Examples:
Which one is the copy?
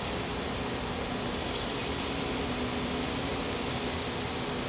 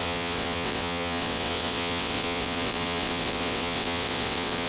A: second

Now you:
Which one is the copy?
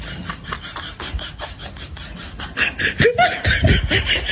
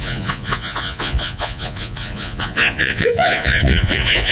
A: second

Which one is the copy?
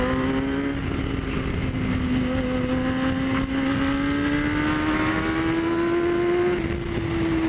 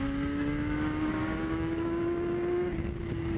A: second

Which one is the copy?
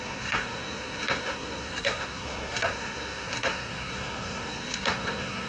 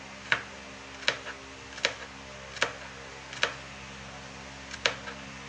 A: first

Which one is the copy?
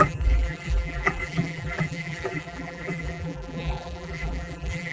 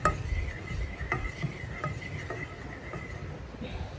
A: first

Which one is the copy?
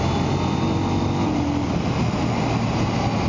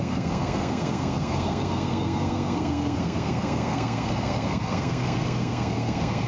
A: second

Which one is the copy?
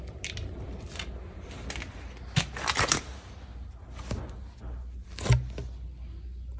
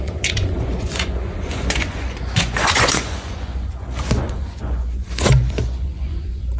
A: second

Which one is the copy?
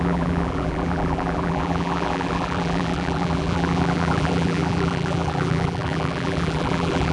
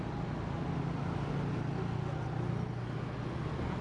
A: first